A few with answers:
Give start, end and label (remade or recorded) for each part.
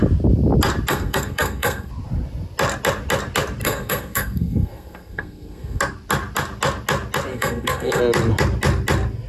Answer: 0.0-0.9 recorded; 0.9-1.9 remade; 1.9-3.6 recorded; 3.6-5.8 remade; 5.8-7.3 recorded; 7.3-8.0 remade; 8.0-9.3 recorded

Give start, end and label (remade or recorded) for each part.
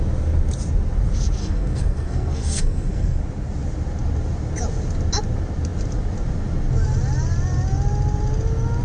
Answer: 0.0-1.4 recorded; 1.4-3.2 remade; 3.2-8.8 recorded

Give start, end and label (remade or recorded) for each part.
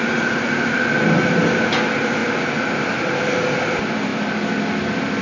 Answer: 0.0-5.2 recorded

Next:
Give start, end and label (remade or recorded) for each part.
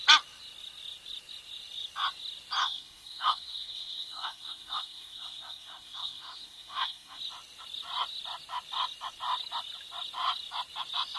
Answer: 0.0-2.6 recorded; 2.6-7.2 remade; 7.2-11.2 recorded